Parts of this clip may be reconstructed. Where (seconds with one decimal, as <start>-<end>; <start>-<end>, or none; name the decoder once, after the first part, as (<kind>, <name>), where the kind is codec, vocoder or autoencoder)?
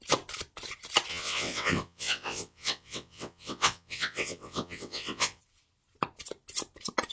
1.1-5.4 (vocoder, WaveNeXt)